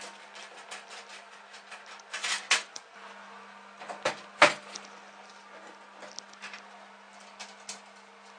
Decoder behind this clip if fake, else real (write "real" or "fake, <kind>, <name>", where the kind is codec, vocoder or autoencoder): real